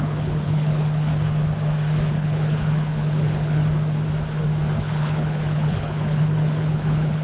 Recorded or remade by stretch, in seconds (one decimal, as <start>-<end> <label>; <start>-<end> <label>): 0.0-1.1 remade; 1.1-2.1 recorded; 2.1-3.6 remade; 3.6-4.8 recorded; 4.8-7.2 remade